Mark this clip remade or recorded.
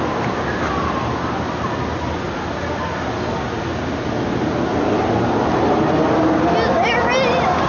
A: recorded